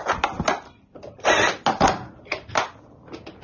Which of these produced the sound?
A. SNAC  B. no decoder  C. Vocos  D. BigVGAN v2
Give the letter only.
B